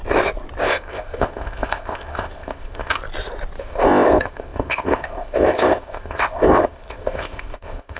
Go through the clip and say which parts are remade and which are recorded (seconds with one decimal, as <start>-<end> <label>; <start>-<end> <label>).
0.0-0.6 recorded; 0.6-3.0 remade; 3.0-3.6 recorded; 3.6-8.0 remade